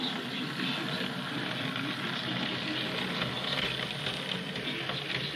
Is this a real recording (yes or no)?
yes